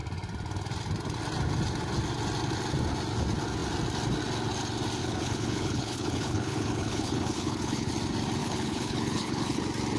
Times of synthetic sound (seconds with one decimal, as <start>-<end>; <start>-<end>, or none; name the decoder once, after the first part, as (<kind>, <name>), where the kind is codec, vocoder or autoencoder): 5.0-7.9 (codec, HILCodec); 8.4-9.6